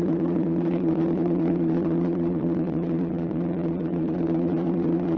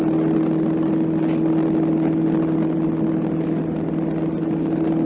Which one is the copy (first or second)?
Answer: first